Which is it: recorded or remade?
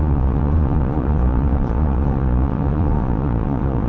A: remade